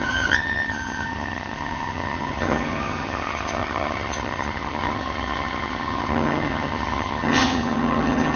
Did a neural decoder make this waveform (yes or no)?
yes